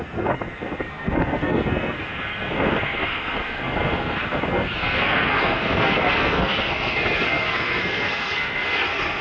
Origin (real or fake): fake